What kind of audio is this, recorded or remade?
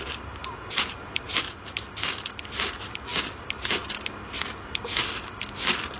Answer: recorded